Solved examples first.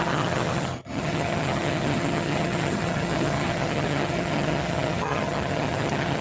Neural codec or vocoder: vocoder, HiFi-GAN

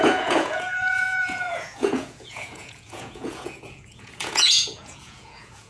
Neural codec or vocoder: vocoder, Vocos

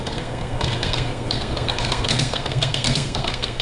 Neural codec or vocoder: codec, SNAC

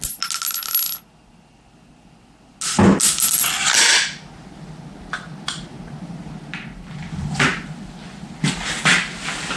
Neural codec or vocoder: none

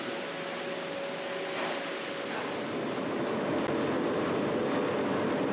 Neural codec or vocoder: none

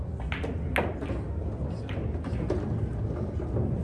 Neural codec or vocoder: none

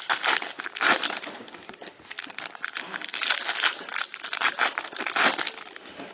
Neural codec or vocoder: none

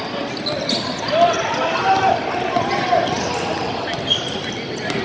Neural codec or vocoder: none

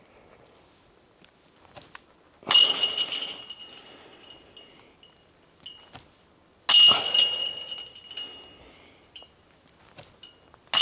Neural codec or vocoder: none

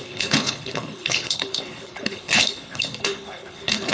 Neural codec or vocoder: codec, HILCodec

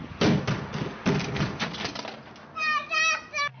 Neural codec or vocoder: none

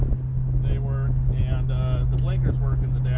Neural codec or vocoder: none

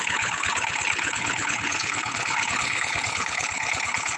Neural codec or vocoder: codec, HILCodec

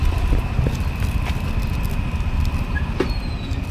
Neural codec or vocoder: none